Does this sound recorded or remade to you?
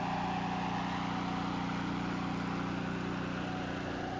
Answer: recorded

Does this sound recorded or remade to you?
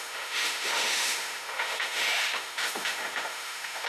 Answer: remade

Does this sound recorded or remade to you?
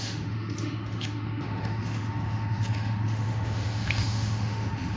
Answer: remade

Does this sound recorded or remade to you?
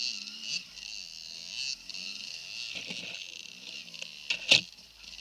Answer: recorded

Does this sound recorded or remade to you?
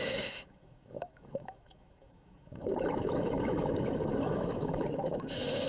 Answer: remade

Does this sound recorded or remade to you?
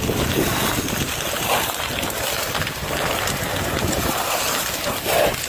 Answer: recorded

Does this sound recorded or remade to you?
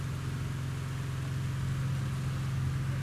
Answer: recorded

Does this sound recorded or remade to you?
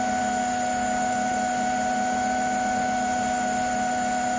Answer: recorded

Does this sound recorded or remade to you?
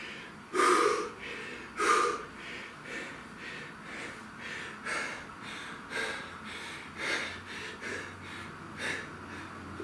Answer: recorded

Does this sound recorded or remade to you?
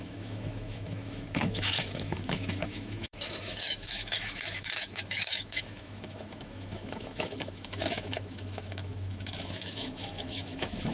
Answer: remade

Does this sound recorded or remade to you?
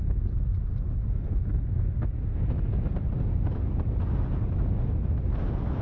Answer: recorded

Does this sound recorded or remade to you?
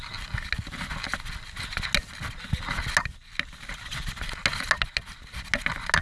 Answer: recorded